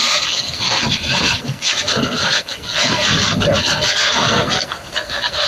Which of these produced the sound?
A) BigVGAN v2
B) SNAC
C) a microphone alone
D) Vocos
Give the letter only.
B